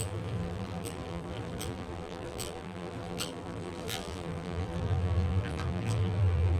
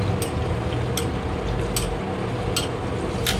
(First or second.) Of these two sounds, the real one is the second